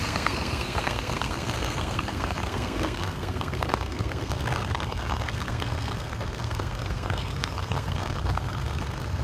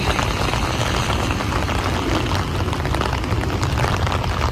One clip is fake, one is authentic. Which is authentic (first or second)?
second